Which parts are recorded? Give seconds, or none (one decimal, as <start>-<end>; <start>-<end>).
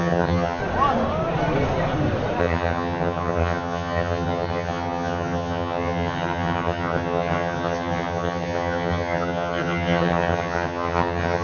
0.6-2.4